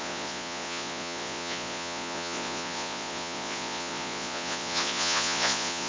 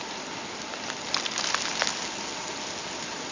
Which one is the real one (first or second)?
second